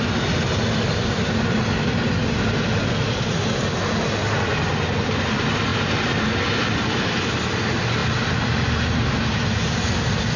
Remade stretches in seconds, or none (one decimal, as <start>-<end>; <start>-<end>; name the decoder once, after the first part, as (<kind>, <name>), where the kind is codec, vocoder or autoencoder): none